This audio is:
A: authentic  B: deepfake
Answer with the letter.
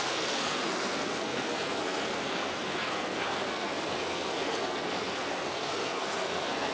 B